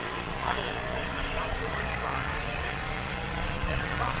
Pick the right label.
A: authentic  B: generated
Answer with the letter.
B